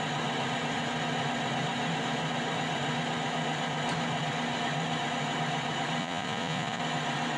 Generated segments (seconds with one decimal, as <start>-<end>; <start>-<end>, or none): 6.0-6.8